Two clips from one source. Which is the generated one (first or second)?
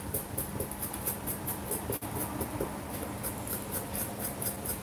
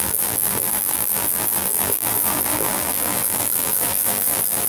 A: second